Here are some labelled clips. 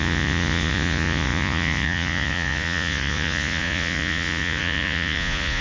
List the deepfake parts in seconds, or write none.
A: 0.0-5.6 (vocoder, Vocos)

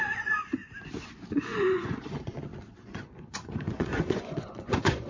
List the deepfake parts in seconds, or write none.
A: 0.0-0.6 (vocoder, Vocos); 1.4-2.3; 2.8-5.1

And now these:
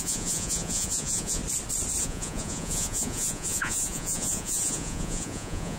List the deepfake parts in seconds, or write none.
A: 0.0-1.4 (vocoder, Vocos); 2.0-5.8